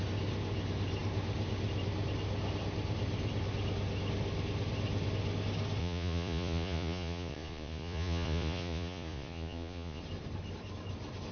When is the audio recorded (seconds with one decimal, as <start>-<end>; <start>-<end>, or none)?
0.0-5.8; 10.0-11.3